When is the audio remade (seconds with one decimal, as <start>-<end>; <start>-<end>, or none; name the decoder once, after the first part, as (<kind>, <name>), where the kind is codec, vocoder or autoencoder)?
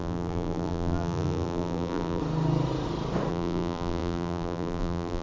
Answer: 0.0-2.2 (vocoder, BigVGAN v2); 3.3-5.2